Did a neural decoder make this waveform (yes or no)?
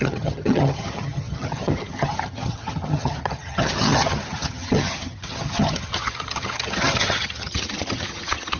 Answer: yes